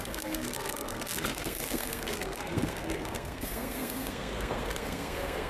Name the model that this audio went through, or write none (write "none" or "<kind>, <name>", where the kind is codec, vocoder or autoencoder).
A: codec, SNAC